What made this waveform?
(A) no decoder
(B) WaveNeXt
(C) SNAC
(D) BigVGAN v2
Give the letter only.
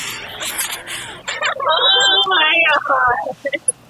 A